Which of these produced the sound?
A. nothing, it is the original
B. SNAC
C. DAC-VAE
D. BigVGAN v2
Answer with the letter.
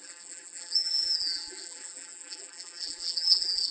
D